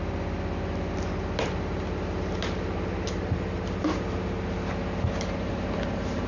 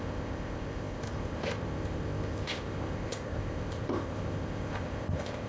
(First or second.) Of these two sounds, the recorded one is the first